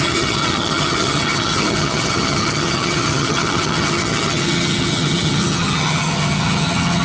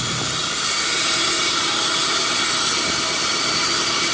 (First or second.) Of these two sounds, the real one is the second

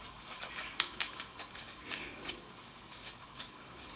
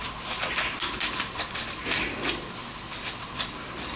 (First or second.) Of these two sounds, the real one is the second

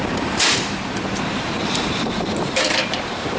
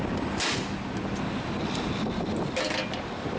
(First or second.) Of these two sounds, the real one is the second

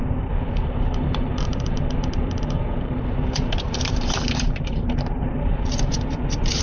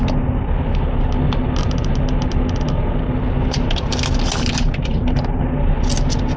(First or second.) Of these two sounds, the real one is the second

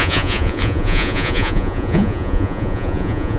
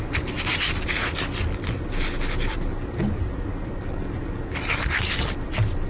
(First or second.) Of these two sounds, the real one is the second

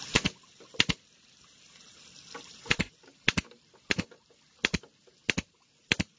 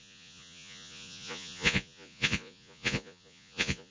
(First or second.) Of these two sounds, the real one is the first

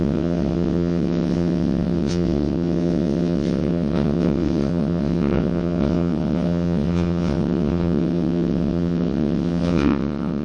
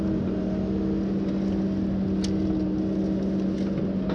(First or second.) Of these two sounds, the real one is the second